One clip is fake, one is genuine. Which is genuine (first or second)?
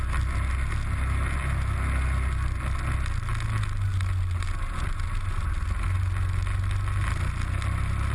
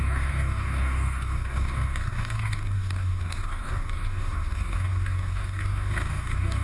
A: first